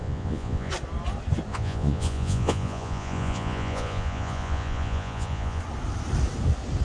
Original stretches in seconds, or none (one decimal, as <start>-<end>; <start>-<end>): 0.7-1.5; 5.6-6.8